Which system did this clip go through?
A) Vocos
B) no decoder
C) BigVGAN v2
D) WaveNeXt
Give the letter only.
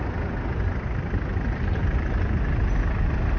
C